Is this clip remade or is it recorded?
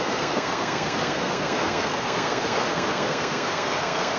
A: remade